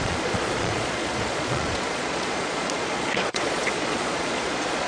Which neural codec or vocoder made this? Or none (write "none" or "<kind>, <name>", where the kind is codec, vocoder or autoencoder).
vocoder, Vocos